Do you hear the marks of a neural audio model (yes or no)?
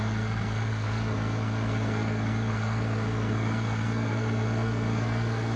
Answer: yes